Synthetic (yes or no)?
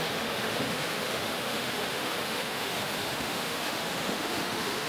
yes